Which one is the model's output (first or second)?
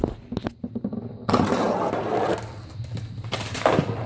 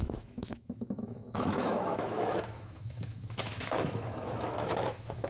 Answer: second